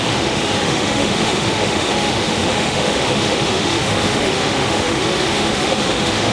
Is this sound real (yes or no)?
no